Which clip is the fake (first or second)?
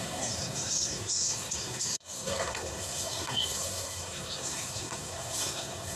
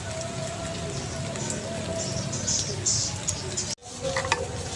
first